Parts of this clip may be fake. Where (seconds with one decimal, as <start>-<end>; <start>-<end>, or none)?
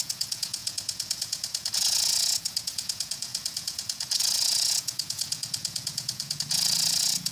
0.0-7.3